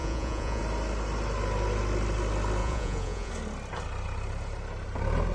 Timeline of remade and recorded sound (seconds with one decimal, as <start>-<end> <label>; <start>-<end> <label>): 0.0-0.6 remade; 0.6-2.6 recorded; 2.6-3.3 remade; 3.3-5.3 recorded